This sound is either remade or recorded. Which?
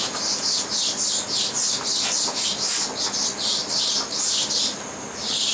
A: recorded